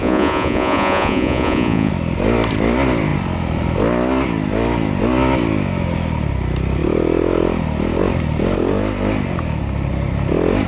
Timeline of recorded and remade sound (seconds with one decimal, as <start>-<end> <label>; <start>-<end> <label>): 0.0-1.9 remade; 1.9-10.7 recorded

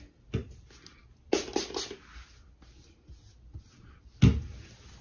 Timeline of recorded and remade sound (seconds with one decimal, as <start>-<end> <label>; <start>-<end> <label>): 0.0-5.0 recorded

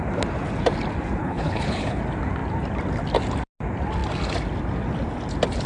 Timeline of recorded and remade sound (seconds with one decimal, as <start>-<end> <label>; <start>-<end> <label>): 0.0-1.2 recorded; 1.2-2.0 remade; 2.0-5.7 recorded

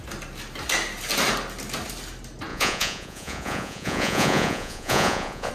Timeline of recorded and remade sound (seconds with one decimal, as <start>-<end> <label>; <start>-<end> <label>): 0.0-2.5 recorded; 2.5-5.5 remade